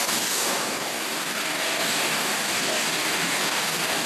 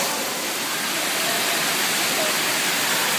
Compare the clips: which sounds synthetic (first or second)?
first